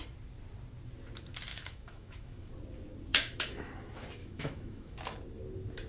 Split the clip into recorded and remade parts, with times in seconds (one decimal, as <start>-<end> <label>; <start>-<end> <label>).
0.0-1.5 recorded; 1.5-2.5 remade; 2.5-3.1 recorded; 3.1-3.7 remade; 3.7-4.2 recorded; 4.2-5.0 remade; 5.0-5.9 recorded